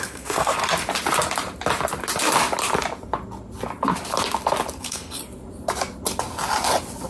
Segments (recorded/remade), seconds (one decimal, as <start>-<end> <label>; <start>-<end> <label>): 0.0-0.6 remade; 0.6-4.8 recorded; 4.8-5.2 remade; 5.2-7.1 recorded